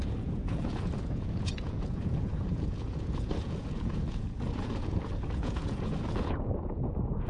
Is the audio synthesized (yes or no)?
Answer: yes